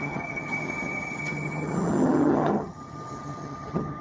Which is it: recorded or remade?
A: remade